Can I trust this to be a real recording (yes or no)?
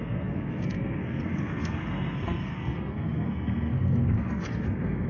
no